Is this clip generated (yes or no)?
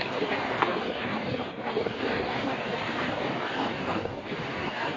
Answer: yes